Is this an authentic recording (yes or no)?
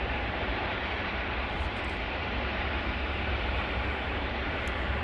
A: no